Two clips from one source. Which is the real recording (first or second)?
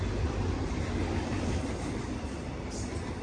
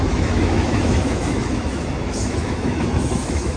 first